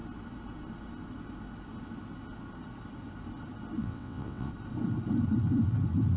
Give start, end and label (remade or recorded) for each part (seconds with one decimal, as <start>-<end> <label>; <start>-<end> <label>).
0.0-3.8 recorded; 3.8-4.5 remade; 4.5-6.2 recorded

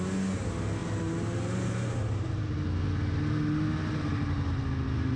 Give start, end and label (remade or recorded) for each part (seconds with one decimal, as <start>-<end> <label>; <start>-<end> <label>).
0.0-5.2 recorded

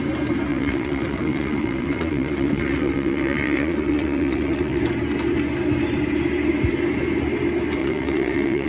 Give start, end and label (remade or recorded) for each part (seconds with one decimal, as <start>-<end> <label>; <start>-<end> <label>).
0.0-0.5 recorded; 0.5-4.8 remade; 4.8-7.8 recorded; 7.8-8.7 remade

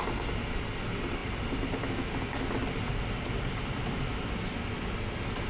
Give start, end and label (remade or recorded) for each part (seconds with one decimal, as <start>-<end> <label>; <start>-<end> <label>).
0.0-5.5 recorded

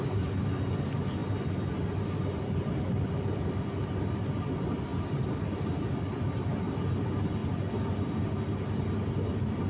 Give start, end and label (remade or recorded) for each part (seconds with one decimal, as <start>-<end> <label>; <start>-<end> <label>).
0.0-9.7 recorded